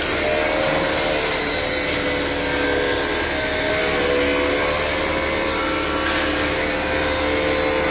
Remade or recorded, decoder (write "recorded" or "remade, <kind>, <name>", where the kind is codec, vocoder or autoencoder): recorded